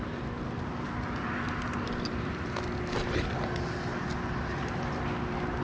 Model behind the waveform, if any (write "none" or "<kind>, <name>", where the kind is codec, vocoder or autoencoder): none